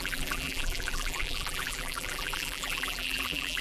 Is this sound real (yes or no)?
no